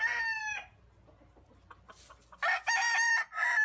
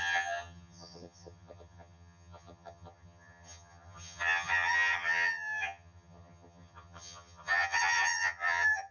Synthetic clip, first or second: second